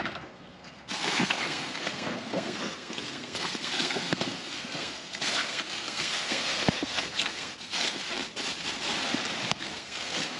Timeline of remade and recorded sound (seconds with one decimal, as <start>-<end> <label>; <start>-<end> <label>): 0.0-8.0 remade; 8.0-9.5 recorded; 9.5-10.4 remade